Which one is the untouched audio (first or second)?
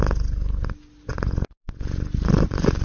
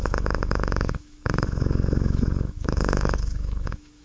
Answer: first